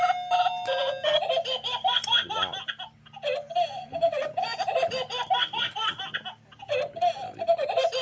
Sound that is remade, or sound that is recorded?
recorded